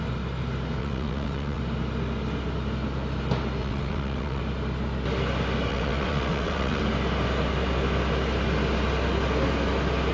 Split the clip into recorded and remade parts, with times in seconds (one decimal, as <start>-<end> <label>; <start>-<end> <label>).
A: 0.0-0.8 recorded; 0.8-1.6 remade; 1.6-3.6 recorded; 3.6-4.4 remade; 4.4-5.7 recorded; 5.7-6.8 remade; 6.8-10.1 recorded